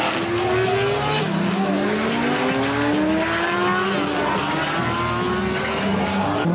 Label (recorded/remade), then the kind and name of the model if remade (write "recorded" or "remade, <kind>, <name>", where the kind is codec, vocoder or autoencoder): recorded